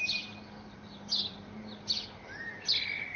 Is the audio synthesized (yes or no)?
no